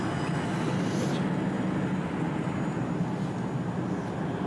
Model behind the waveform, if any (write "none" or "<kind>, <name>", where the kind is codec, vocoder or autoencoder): none